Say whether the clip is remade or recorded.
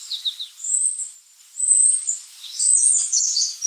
recorded